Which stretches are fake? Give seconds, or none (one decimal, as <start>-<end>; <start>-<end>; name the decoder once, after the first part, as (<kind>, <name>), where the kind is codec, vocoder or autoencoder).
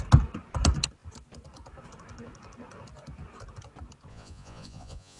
4.1-5.2 (vocoder, Vocos)